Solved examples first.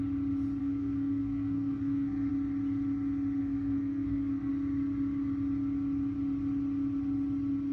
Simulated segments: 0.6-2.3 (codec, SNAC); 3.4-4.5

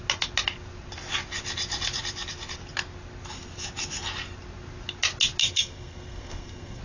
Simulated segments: 5.4-6.8 (codec, SNAC)